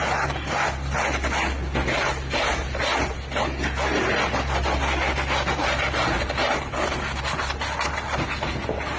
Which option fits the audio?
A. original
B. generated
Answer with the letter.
A